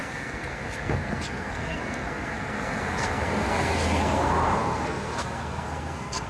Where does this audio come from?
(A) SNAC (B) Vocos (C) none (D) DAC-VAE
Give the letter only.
A